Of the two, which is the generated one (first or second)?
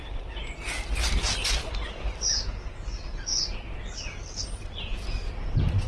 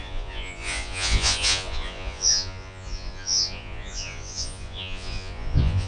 second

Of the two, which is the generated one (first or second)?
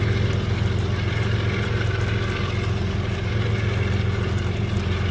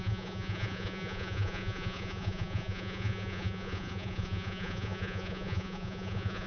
second